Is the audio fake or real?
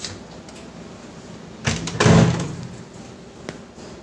real